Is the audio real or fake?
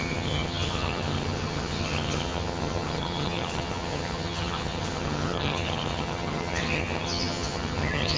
fake